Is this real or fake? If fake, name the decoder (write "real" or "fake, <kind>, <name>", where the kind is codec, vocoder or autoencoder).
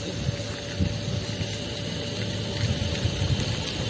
real